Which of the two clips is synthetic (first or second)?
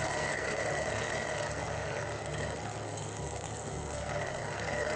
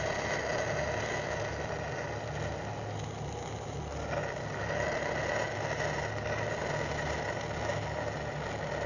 first